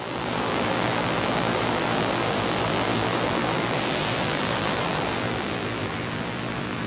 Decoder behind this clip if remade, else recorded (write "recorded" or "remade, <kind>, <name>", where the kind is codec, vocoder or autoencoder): remade, vocoder, BigVGAN v2